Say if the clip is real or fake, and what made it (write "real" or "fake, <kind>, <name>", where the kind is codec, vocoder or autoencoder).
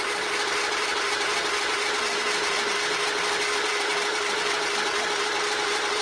fake, vocoder, BigVGAN v2